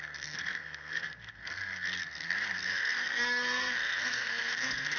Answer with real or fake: fake